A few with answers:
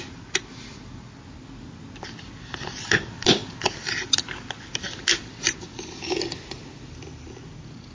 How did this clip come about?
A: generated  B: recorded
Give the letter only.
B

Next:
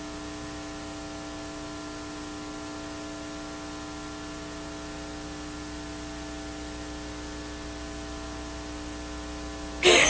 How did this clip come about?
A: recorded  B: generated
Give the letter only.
A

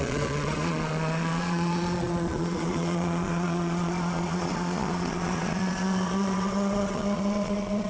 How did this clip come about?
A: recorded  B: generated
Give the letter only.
B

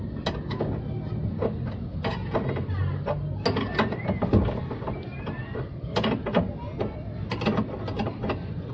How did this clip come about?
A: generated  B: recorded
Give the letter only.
B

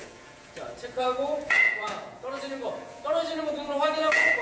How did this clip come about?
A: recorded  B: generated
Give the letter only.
B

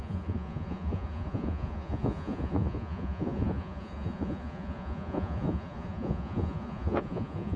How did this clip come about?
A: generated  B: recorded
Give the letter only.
A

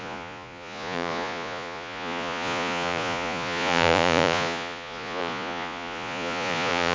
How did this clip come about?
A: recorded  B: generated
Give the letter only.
B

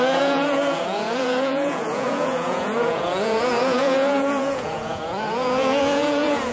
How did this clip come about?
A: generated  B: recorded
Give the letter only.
A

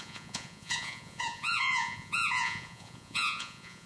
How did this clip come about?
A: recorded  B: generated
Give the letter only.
B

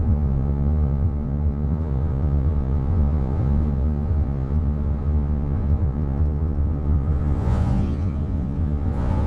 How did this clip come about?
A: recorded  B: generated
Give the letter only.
B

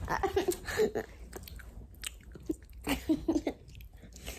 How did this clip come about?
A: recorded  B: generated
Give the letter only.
A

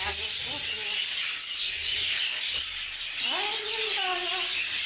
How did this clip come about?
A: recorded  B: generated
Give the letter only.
A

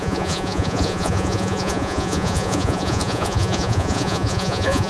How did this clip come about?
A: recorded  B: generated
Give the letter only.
B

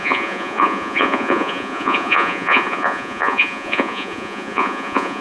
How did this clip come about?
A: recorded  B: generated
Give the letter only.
B